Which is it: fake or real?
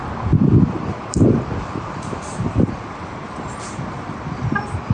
fake